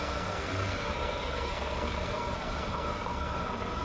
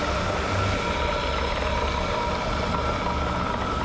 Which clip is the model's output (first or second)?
first